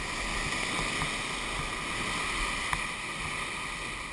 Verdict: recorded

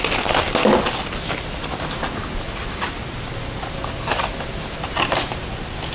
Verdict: recorded